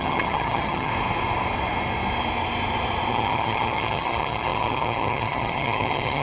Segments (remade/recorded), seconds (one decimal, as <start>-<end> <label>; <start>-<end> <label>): 0.0-0.9 remade; 0.9-3.1 recorded; 3.1-6.2 remade